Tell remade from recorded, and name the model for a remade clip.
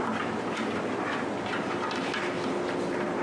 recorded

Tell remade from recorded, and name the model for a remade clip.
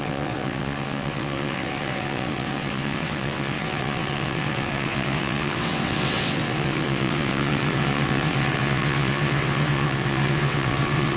remade, vocoder, WaveNeXt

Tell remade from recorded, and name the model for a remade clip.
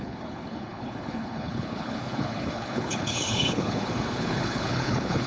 remade, codec, HILCodec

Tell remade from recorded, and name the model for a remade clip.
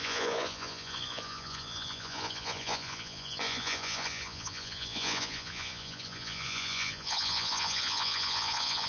remade, vocoder, Vocos